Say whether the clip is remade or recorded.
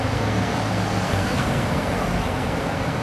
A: remade